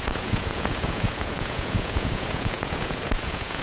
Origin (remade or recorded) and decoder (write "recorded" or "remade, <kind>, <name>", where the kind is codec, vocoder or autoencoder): remade, vocoder, Vocos